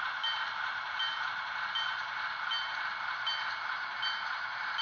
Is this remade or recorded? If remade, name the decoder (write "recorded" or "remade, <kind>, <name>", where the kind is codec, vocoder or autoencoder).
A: recorded